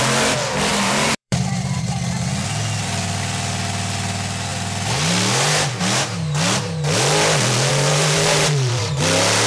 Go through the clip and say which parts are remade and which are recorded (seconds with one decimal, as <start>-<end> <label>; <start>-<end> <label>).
0.0-0.7 recorded; 0.7-1.9 remade; 1.9-7.7 recorded; 7.7-8.8 remade; 8.8-9.5 recorded